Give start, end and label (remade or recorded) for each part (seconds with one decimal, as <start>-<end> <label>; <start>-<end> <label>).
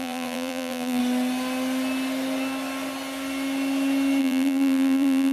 0.0-1.0 remade; 1.0-4.2 recorded; 4.2-5.3 remade